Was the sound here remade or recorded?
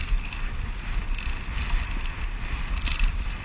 recorded